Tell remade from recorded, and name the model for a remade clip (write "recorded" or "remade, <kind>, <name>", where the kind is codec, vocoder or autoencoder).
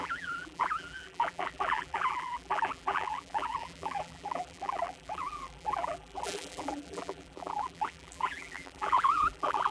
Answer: remade, vocoder, BigVGAN v2